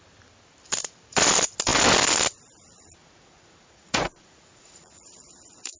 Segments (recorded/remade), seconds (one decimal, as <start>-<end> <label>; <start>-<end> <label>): 0.0-3.0 recorded; 3.0-5.0 remade; 5.0-5.8 recorded